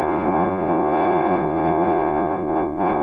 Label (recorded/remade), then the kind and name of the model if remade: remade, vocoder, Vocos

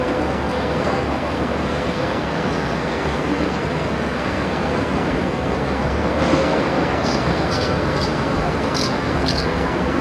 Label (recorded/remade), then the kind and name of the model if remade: remade, codec, SNAC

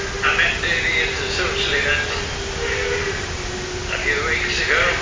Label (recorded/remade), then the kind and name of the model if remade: recorded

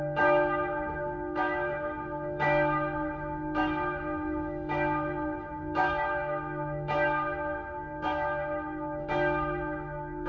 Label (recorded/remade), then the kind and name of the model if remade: remade, autoencoder, DAC-VAE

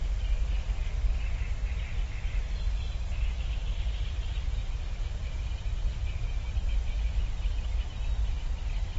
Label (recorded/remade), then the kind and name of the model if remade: recorded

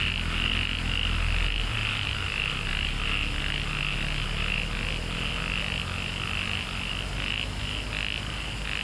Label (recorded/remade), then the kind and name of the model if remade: recorded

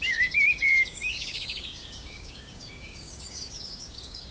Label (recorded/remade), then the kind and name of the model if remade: remade, codec, DAC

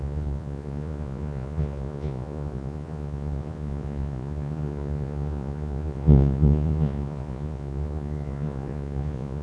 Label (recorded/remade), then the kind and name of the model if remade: remade, vocoder, Vocos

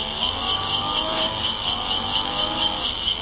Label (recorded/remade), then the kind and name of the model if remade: remade, codec, DAC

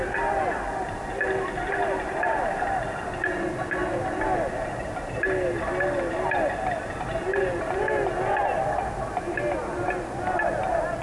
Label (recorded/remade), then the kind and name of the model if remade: recorded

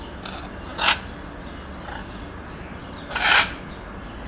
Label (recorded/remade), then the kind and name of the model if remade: recorded